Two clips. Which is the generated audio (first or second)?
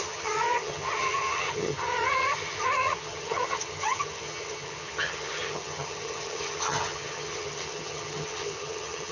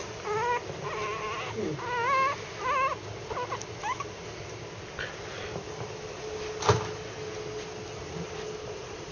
first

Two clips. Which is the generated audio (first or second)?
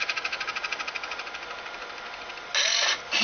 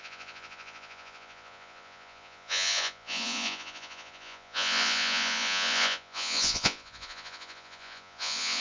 second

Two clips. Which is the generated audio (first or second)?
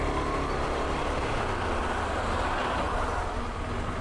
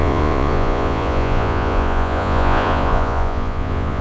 second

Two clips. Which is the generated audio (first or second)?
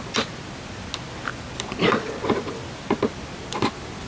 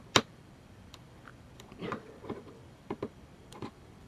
second